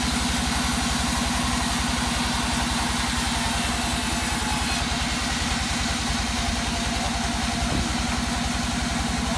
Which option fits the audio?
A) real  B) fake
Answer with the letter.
A